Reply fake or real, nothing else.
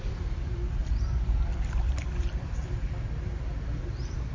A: fake